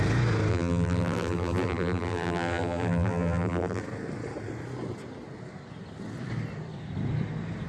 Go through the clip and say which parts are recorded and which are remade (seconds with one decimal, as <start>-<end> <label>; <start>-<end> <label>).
0.0-0.5 recorded; 0.5-3.8 remade; 3.8-7.7 recorded

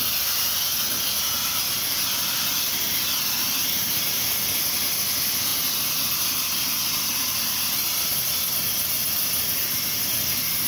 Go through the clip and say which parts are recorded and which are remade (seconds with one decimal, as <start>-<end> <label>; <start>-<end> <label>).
0.0-10.7 recorded

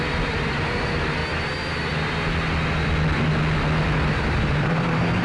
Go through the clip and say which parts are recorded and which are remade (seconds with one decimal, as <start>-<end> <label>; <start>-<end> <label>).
0.0-1.2 remade; 1.2-4.1 recorded; 4.1-5.2 remade

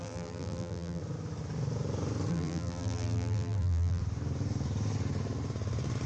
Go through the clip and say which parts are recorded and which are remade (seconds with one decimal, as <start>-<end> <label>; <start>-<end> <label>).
0.0-1.0 remade; 1.0-2.3 recorded; 2.3-4.0 remade; 4.0-6.1 recorded